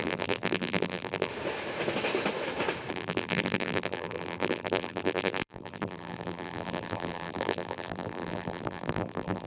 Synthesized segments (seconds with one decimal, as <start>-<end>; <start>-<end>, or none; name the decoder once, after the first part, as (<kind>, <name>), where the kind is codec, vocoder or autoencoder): 0.0-1.3 (vocoder, BigVGAN v2); 2.9-9.5